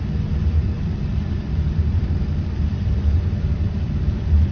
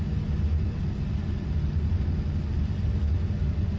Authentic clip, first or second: second